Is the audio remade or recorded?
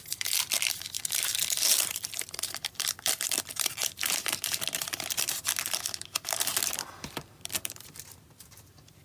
remade